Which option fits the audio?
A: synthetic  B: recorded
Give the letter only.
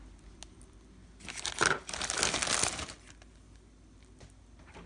B